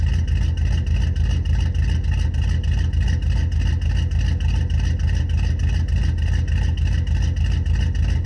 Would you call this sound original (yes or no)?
yes